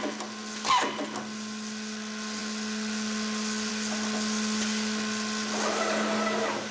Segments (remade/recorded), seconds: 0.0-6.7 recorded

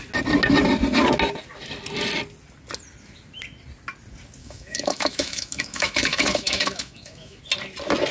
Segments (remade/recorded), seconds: 0.0-4.4 recorded; 4.4-7.4 remade; 7.4-8.1 recorded